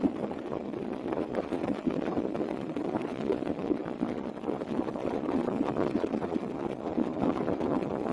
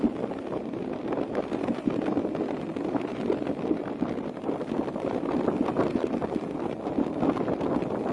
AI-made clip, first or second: first